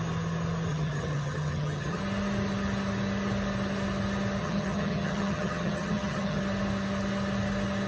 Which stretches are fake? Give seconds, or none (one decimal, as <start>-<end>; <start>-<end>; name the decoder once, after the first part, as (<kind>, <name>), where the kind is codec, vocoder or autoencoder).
0.7-2.0 (vocoder, HiFi-GAN); 4.4-6.4

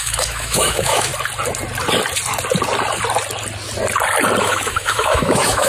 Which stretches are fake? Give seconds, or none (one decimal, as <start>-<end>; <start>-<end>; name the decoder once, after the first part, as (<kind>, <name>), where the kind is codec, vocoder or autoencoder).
0.0-1.1 (autoencoder, DAC-VAE); 4.4-5.7

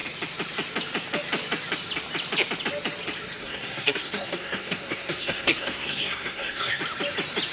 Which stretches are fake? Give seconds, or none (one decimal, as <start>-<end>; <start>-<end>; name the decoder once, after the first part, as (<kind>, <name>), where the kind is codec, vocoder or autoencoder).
3.4-6.8 (codec, SNAC)

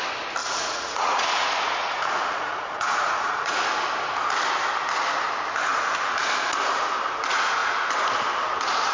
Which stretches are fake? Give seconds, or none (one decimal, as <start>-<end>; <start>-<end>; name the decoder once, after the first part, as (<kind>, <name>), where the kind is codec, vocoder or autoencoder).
0.4-3.6 (vocoder, Vocos)

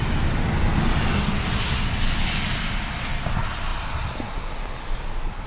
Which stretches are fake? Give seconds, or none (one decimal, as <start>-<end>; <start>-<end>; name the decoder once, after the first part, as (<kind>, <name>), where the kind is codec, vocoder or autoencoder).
none